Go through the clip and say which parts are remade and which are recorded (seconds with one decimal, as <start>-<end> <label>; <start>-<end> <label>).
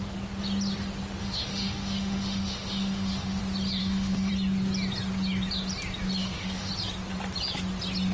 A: 0.0-1.2 recorded; 1.2-3.4 remade; 3.4-3.8 recorded; 3.8-4.3 remade; 4.3-6.2 recorded; 6.2-6.7 remade; 6.7-8.1 recorded